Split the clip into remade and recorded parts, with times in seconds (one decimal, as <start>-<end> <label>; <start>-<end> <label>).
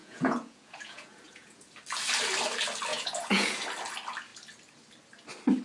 0.0-1.6 remade; 1.6-2.9 recorded; 2.9-3.6 remade; 3.6-5.6 recorded